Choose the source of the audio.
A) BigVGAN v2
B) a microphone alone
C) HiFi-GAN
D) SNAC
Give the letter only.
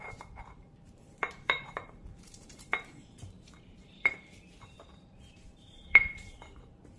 A